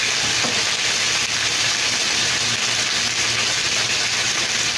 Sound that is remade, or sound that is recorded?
recorded